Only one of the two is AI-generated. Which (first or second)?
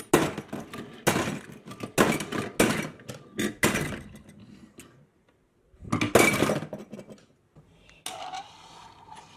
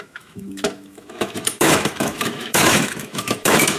second